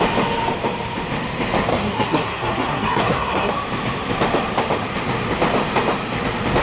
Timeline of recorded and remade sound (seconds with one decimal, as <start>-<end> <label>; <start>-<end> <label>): 0.0-1.7 recorded; 1.7-3.5 remade; 3.5-6.6 recorded